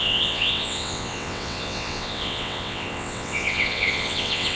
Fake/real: fake